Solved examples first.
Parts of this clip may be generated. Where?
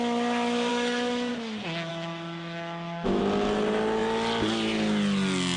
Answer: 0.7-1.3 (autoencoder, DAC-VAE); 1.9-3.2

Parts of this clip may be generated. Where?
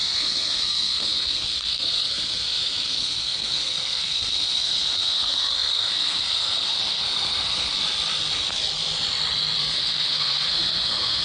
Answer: 0.0-7.7 (codec, SNAC); 9.6-11.2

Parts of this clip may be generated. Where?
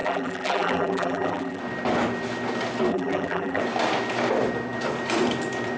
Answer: 0.0-1.6 (vocoder, BigVGAN v2); 2.9-3.6